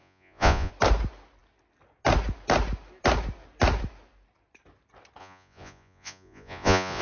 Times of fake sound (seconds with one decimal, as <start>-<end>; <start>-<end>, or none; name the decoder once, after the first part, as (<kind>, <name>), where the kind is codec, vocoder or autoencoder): 0.0-0.7 (vocoder, Vocos); 5.2-7.0